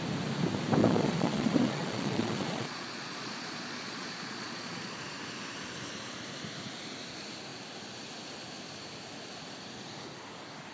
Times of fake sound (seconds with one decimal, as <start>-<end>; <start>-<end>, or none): 0.8-5.0